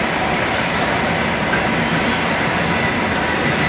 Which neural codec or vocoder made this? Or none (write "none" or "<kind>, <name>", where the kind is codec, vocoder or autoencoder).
none